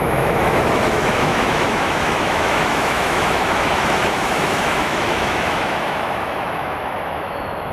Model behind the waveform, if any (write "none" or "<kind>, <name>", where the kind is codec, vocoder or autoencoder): autoencoder, DAC-VAE